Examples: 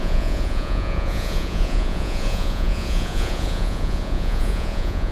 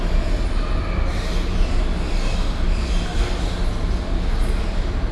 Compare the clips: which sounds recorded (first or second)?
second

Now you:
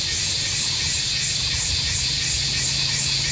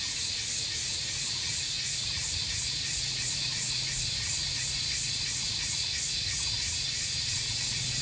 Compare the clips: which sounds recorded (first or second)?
first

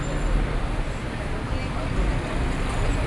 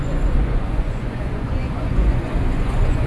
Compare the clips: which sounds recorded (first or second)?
first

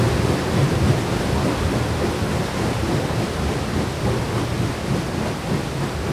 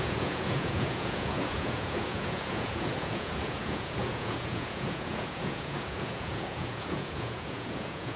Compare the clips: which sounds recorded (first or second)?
first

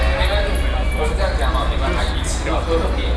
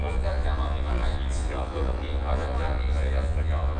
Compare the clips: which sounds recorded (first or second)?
first